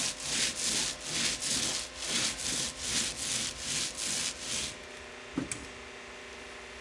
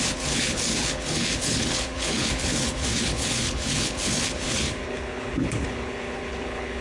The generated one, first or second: second